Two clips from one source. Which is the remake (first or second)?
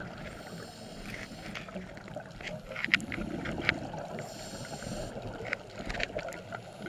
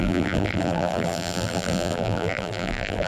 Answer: second